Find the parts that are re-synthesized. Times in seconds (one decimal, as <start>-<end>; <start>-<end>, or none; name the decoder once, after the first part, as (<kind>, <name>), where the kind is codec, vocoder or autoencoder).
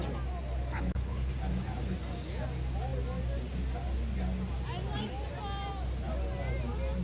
0.7-1.3 (codec, HILCodec)